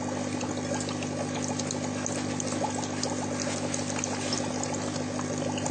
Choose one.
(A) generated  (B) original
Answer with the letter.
B